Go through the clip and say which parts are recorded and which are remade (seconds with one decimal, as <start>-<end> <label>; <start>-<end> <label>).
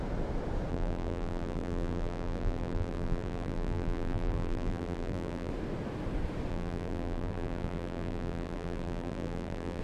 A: 0.0-0.7 recorded; 0.7-5.5 remade; 5.5-6.5 recorded; 6.5-9.8 remade